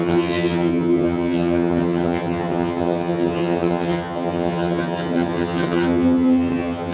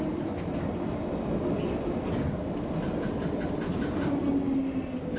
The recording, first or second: second